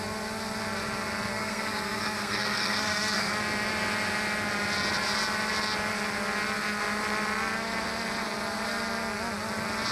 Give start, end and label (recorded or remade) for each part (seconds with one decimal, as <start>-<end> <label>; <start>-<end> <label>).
0.0-1.3 recorded; 1.3-3.4 remade; 3.4-9.9 recorded